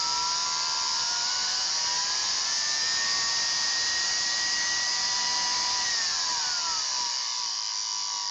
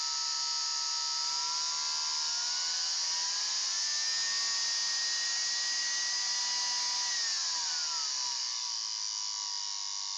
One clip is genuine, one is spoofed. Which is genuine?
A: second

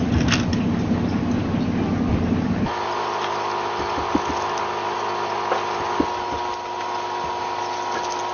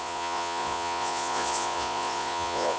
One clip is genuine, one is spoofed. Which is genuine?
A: first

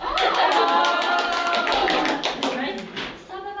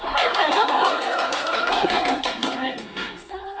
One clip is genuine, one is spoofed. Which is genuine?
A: first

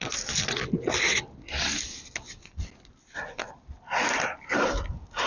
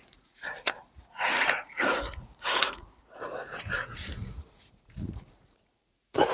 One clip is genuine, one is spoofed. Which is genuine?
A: first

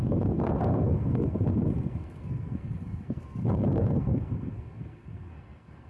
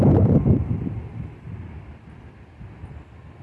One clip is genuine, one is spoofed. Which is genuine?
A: second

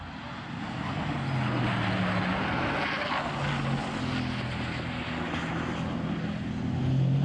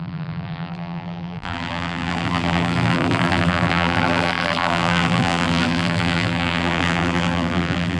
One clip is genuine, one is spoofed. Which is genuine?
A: first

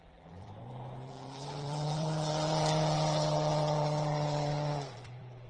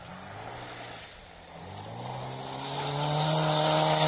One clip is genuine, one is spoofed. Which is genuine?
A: second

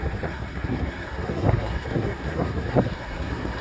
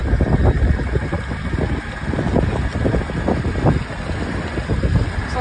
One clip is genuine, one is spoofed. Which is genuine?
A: second